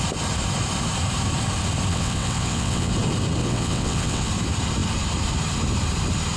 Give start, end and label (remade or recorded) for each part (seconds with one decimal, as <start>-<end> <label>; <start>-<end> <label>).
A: 0.0-1.9 recorded; 1.9-2.9 remade; 2.9-3.4 recorded; 3.4-4.3 remade; 4.3-6.4 recorded